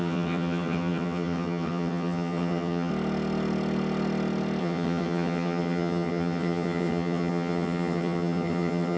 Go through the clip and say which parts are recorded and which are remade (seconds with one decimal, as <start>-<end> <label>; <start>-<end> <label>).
0.0-2.9 remade; 2.9-4.6 recorded; 4.6-9.0 remade